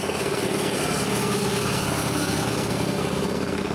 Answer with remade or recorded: remade